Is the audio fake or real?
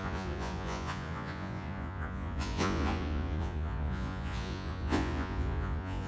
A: fake